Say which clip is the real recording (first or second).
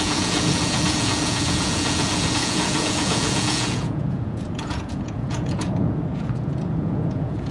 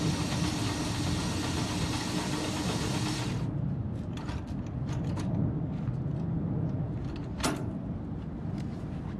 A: second